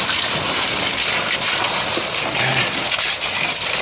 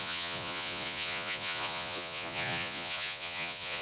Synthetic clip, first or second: second